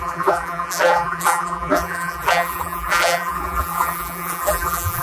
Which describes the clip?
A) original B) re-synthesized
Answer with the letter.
B